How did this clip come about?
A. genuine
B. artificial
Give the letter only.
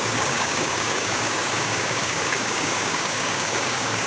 B